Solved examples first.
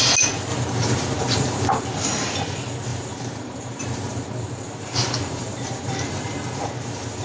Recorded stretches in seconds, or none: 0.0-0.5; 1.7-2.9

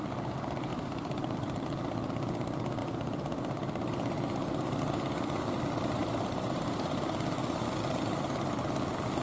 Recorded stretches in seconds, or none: 0.0-0.7; 1.6-2.8; 4.8-6.0; 7.1-9.2

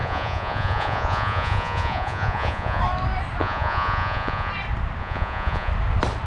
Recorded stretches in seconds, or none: 2.8-3.4; 4.5-5.0; 5.7-6.3

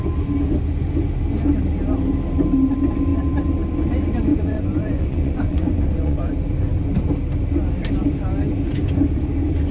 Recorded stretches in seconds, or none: 0.0-4.3; 6.2-9.7

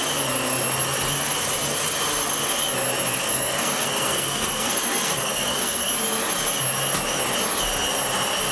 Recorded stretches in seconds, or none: 0.0-3.1; 5.9-8.5

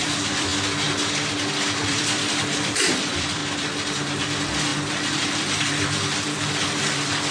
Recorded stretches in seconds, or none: 0.5-1.9; 3.4-4.2

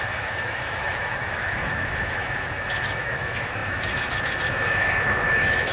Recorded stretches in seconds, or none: none

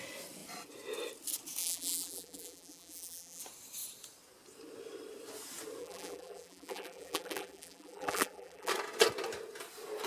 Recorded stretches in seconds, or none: 0.0-1.6; 3.4-5.8; 8.7-10.1